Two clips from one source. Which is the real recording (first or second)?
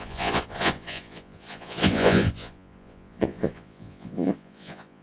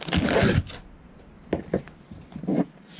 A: second